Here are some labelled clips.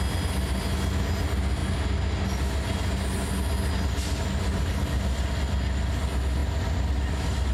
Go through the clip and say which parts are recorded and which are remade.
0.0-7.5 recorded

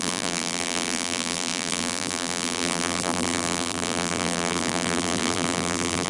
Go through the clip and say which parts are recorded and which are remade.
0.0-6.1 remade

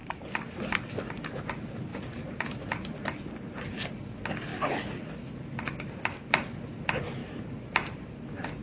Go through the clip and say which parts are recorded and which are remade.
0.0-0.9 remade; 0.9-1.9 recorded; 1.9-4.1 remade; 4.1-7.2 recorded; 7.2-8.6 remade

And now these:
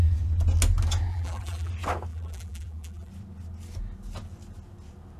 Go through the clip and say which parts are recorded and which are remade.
0.0-1.1 recorded; 1.1-1.7 remade; 1.7-2.1 recorded; 2.1-3.1 remade; 3.1-5.2 recorded

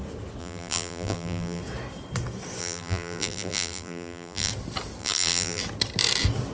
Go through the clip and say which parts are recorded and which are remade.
0.0-0.4 recorded; 0.4-1.6 remade; 1.6-2.6 recorded; 2.6-4.5 remade; 4.5-5.0 recorded; 5.0-5.6 remade; 5.6-6.5 recorded

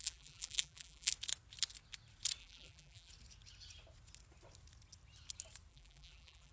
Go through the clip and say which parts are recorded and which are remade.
0.0-1.1 remade; 1.1-2.4 recorded; 2.4-3.1 remade; 3.1-5.7 recorded; 5.7-6.5 remade

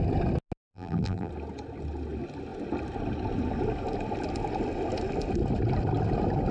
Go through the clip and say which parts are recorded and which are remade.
0.0-0.7 recorded; 0.7-1.3 remade; 1.3-6.5 recorded